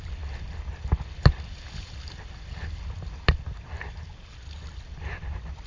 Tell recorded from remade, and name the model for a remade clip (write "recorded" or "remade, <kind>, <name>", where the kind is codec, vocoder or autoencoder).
recorded